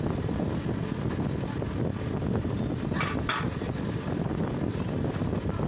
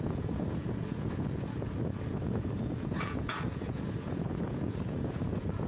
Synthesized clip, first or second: second